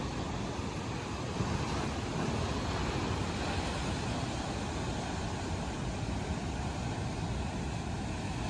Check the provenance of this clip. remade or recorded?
recorded